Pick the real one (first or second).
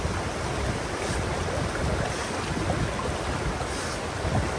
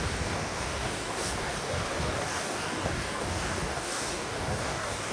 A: first